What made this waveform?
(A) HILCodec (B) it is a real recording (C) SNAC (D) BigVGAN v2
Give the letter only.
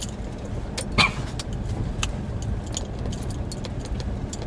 B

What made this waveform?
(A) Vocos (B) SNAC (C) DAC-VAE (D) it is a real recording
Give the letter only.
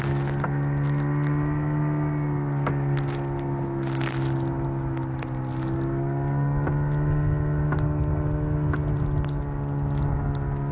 D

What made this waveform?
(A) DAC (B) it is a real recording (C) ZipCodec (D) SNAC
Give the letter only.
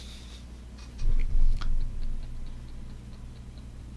B